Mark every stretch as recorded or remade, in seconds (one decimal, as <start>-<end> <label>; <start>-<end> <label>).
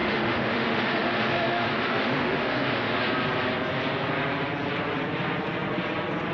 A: 0.0-3.0 remade; 3.0-6.3 recorded